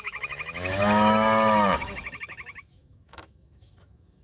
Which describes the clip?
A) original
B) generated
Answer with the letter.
B